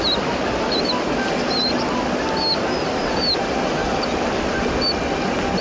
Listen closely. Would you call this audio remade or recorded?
recorded